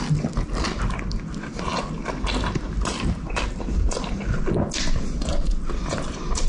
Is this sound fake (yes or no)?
no